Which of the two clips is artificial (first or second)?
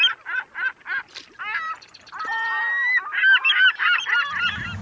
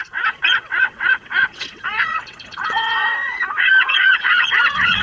second